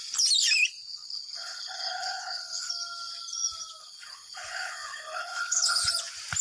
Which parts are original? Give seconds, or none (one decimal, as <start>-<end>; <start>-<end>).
0.0-0.8; 2.7-3.8; 5.9-6.4